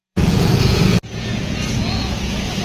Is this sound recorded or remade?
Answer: remade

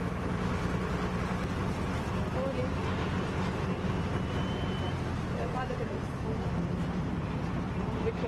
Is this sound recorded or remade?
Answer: recorded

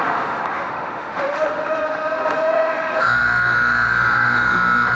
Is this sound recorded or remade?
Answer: remade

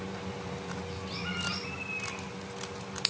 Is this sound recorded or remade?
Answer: recorded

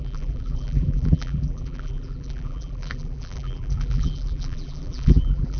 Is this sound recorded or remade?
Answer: remade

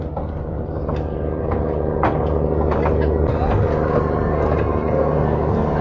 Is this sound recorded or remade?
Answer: recorded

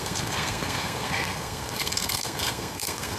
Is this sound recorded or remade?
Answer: remade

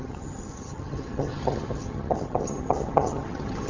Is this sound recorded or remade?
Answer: remade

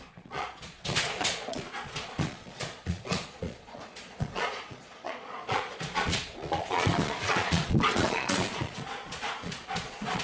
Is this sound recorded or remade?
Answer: remade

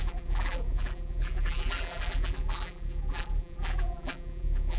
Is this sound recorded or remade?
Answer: remade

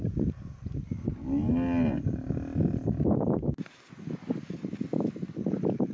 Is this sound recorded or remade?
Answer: recorded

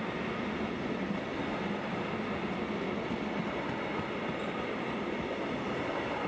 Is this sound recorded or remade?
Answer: recorded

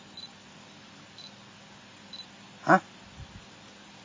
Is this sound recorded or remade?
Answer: recorded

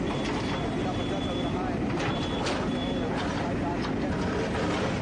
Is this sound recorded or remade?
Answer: remade